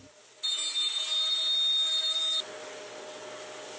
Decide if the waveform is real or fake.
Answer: real